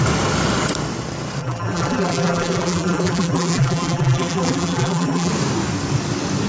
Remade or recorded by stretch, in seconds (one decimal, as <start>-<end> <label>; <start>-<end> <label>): 0.0-1.4 recorded; 1.4-5.3 remade; 5.3-6.5 recorded